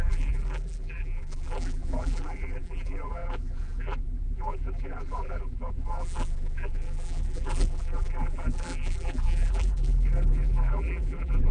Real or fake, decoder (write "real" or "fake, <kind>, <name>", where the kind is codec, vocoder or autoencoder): fake, vocoder, BigVGAN v2